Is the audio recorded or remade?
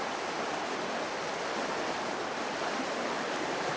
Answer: recorded